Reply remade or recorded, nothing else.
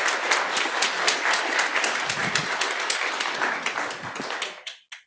recorded